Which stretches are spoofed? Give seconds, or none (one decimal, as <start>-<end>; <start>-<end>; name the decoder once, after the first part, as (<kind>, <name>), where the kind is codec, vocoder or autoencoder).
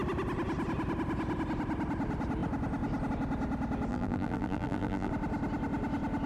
3.9-5.1 (vocoder, BigVGAN v2)